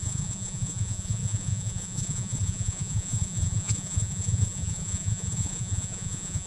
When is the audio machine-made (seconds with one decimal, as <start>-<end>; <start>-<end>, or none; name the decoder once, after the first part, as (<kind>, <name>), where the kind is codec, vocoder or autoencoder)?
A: 0.0-6.5 (vocoder, Vocos)

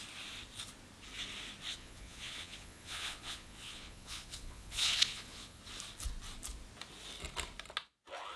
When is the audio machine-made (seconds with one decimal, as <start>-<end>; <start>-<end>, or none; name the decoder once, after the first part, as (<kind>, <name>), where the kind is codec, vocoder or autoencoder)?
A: 1.7-5.6 (vocoder, Vocos)

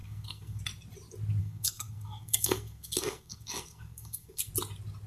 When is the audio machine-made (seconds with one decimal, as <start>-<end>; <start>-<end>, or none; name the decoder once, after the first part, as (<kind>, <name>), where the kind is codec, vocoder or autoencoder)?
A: 0.0-0.6 (codec, SNAC); 1.4-4.5

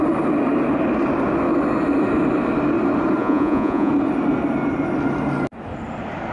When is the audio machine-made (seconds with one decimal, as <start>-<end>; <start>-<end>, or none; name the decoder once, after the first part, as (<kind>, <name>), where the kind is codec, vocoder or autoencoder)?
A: 3.2-3.9 (vocoder, Vocos)

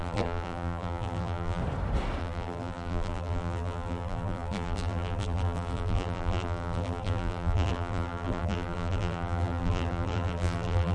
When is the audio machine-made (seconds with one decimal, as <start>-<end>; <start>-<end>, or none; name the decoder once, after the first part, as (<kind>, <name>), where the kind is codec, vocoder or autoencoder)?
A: 0.0-1.6 (vocoder, BigVGAN v2); 2.2-10.9

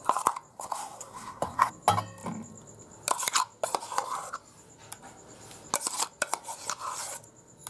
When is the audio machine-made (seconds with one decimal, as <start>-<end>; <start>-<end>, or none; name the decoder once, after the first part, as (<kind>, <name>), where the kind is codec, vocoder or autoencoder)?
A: 0.5-1.7 (codec, SNAC)